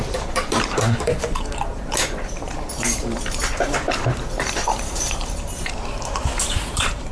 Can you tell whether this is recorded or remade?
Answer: remade